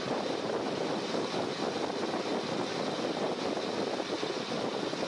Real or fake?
real